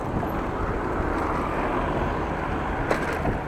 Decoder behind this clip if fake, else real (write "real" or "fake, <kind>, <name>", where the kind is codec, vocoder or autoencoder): real